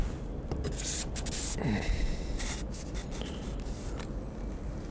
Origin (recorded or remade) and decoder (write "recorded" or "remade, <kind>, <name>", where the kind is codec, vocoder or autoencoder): recorded